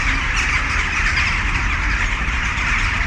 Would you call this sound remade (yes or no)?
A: no